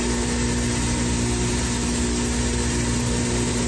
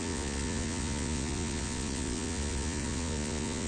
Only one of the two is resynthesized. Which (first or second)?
second